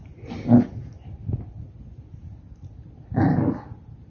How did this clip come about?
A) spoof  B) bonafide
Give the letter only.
B